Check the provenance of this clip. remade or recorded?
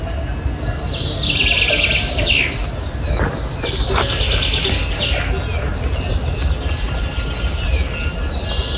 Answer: recorded